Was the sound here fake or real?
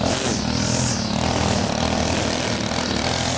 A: real